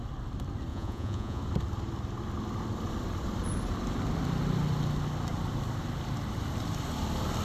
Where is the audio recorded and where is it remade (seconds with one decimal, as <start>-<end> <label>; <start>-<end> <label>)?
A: 0.0-0.7 recorded; 0.7-1.4 remade; 1.4-7.4 recorded